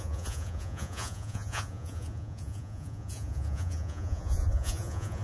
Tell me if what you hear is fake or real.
fake